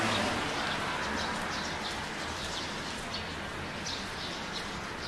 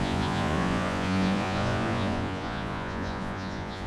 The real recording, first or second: first